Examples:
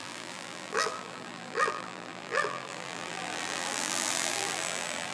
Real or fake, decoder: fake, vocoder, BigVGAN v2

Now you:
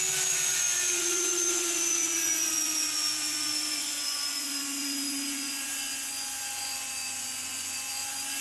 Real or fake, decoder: fake, vocoder, Vocos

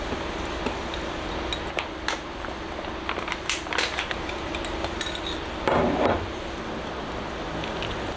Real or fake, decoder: real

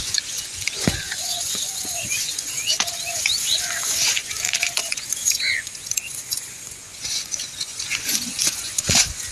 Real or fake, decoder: fake, vocoder, Vocos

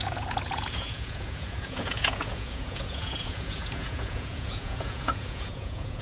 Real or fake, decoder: fake, vocoder, Vocos